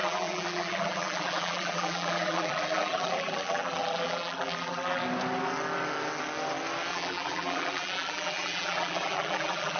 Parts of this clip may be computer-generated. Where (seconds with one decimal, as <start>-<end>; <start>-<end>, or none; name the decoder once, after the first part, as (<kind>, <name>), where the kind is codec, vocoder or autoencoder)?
0.0-5.0 (vocoder, BigVGAN v2); 6.9-9.8